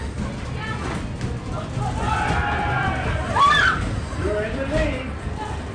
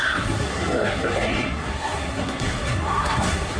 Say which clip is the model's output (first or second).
second